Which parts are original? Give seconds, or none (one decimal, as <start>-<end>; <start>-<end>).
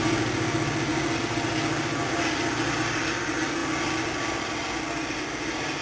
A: 0.0-5.8